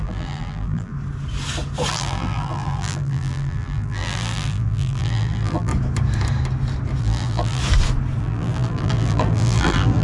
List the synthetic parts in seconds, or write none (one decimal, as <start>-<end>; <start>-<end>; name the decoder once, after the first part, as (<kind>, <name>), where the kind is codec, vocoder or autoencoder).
0.0-0.9 (vocoder, BigVGAN v2); 1.9-5.7; 7.0-7.6; 8.2-10.0